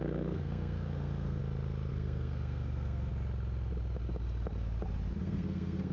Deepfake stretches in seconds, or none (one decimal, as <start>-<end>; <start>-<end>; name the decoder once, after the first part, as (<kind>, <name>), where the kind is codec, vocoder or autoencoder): 0.0-1.4 (codec, SNAC); 1.9-3.1; 5.2-5.9